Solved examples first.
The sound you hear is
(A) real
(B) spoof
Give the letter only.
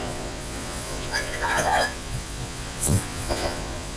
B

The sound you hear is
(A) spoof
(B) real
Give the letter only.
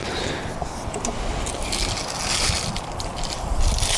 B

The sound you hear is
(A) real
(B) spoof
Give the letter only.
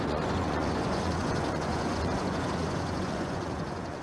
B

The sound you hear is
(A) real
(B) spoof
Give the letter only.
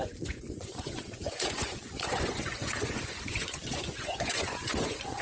B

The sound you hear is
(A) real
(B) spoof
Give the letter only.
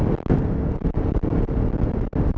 A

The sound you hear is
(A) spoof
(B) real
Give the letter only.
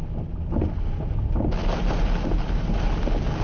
B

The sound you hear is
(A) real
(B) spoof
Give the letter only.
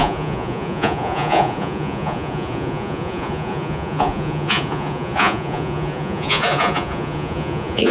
B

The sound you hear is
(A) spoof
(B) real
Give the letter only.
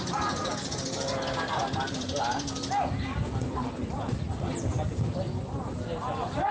B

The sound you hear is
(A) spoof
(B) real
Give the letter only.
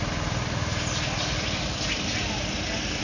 B